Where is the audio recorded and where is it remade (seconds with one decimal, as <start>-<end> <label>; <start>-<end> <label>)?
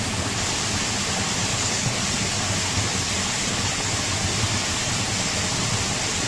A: 0.0-1.5 recorded; 1.5-2.0 remade; 2.0-3.2 recorded; 3.2-3.9 remade; 3.9-6.3 recorded